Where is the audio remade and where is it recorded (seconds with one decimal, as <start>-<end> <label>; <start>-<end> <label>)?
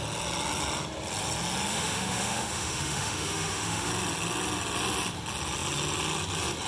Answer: 0.0-1.7 recorded; 1.7-3.9 remade; 3.9-6.7 recorded